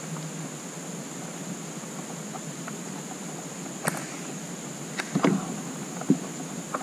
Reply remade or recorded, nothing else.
recorded